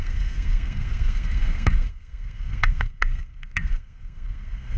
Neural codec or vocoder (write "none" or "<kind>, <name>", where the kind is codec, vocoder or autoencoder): codec, SNAC